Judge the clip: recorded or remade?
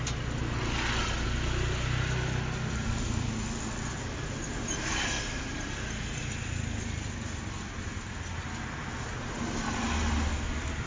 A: recorded